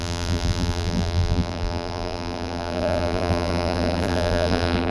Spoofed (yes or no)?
yes